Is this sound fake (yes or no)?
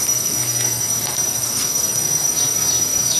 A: yes